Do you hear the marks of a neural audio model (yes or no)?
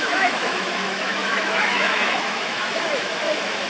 yes